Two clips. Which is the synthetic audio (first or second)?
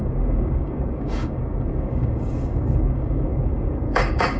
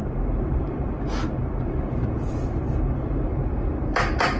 first